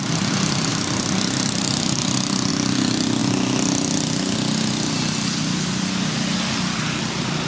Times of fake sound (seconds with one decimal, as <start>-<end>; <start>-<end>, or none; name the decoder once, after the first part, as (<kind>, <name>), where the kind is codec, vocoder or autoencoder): 0.7-2.5 (vocoder, BigVGAN v2)